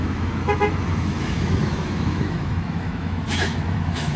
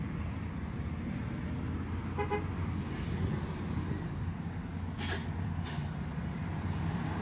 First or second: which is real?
second